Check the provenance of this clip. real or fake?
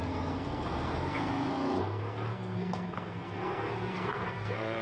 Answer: fake